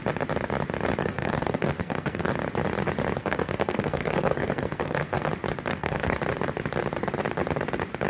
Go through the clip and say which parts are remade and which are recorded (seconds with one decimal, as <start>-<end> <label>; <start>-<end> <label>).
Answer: 0.0-1.0 recorded; 1.0-2.3 remade; 2.3-3.2 recorded; 3.2-5.3 remade; 5.3-5.7 recorded; 5.7-6.2 remade; 6.2-8.1 recorded